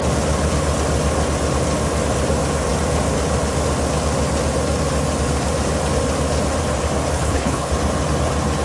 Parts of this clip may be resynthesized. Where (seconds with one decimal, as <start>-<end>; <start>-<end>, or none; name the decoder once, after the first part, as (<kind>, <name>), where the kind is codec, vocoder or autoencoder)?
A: 7.1-7.7 (codec, HILCodec)